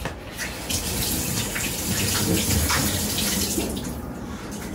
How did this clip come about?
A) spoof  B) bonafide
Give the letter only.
B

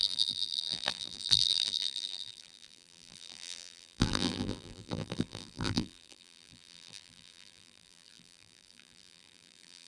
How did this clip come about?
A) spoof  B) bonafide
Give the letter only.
A